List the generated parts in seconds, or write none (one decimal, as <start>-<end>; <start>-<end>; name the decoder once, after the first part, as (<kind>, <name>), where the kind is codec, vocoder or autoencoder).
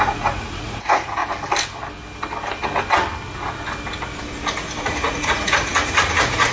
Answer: 0.0-1.2 (vocoder, Vocos); 4.8-6.5